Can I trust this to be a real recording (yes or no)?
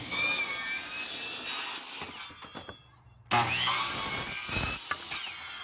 yes